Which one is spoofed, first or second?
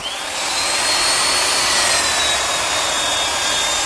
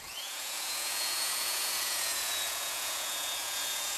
second